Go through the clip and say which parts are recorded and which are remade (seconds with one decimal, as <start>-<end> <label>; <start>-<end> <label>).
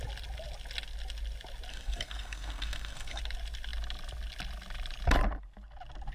0.0-1.7 recorded; 1.7-3.2 remade; 3.2-6.1 recorded